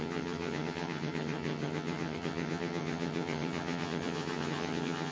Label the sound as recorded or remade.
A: remade